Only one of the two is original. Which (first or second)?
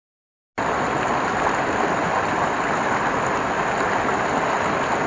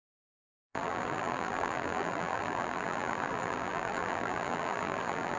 first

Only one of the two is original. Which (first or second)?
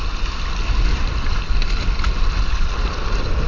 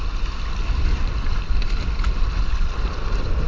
first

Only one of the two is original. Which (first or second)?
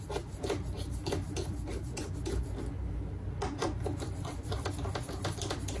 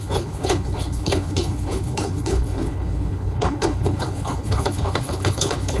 first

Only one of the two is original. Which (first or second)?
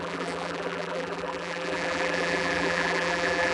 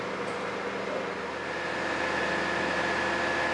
second